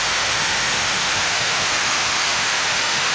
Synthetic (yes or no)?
yes